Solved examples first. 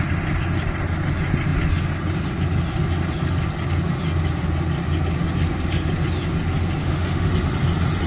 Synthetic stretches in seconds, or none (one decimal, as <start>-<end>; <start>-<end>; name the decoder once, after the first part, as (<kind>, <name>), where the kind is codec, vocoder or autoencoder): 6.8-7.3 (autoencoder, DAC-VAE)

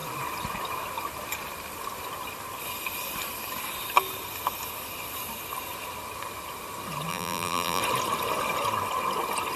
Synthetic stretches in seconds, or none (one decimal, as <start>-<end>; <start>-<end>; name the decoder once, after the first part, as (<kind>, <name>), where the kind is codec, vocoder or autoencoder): 7.1-7.8 (vocoder, BigVGAN v2)

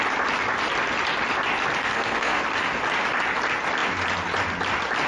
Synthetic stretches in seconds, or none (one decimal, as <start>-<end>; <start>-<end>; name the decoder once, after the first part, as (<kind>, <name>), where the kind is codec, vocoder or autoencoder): 1.8-2.4 (codec, SNAC)